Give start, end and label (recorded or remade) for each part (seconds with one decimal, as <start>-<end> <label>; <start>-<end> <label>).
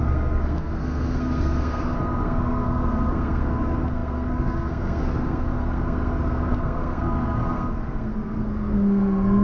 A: 0.0-9.4 remade